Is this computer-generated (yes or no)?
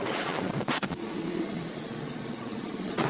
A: yes